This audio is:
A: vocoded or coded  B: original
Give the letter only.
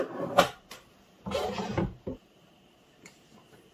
A